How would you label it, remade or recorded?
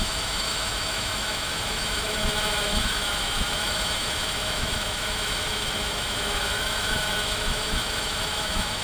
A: remade